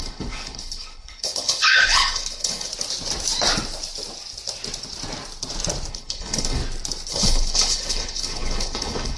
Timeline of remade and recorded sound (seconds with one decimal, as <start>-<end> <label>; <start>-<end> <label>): 0.0-2.7 remade; 2.7-5.9 recorded; 5.9-6.6 remade; 6.6-7.1 recorded; 7.1-9.2 remade